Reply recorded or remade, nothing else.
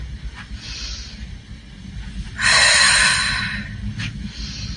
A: recorded